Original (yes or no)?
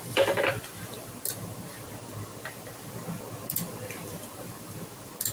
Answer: no